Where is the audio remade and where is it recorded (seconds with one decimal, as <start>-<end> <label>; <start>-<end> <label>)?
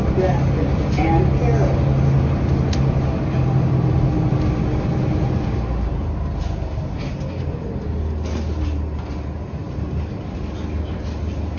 0.0-11.6 recorded